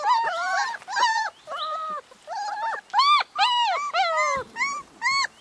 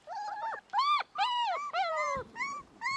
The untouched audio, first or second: first